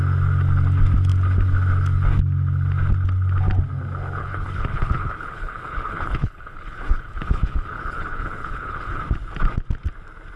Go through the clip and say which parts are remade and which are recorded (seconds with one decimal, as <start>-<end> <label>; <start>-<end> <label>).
0.0-4.2 recorded; 4.2-9.0 remade; 9.0-10.4 recorded